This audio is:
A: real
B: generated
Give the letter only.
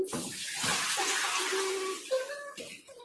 A